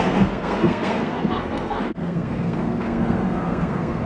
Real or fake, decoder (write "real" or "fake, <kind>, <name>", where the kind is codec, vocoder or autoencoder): fake, codec, SNAC